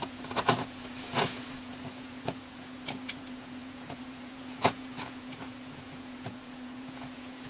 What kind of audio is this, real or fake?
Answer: fake